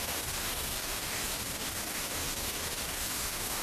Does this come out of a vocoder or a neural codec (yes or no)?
yes